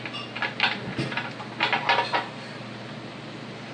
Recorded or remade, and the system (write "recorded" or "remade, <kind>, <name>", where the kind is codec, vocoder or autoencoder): recorded